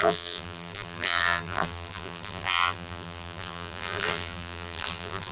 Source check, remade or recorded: remade